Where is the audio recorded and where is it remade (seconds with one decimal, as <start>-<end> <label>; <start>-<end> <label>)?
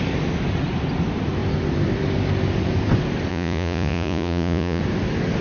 0.0-3.3 recorded; 3.3-4.8 remade; 4.8-5.4 recorded